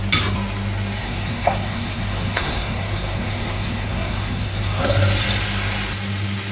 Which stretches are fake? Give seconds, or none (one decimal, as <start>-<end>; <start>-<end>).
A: 1.0-4.9